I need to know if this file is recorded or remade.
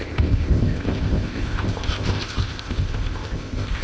remade